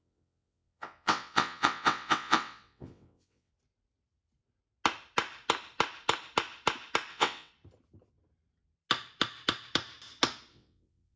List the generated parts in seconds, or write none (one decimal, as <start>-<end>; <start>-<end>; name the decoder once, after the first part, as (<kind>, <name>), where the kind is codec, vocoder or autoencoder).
0.0-3.5 (vocoder, WaveNeXt); 7.1-7.5; 10.5-11.2